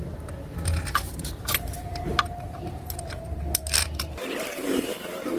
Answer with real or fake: fake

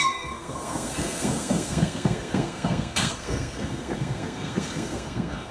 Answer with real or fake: fake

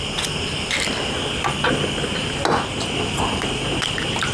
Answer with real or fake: real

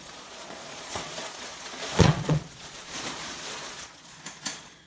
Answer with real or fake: fake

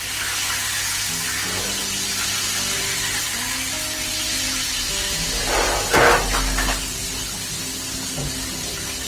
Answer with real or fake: real